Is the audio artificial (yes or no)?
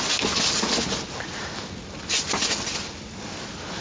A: no